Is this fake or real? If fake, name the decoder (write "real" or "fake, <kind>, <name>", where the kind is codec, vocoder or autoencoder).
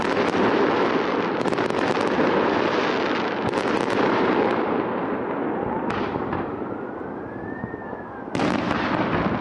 real